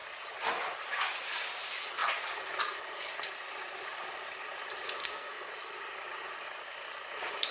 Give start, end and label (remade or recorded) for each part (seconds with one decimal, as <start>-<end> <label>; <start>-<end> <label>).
0.0-5.0 recorded; 5.0-5.5 remade; 5.5-7.5 recorded